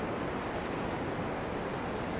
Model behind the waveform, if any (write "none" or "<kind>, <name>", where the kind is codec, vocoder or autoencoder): none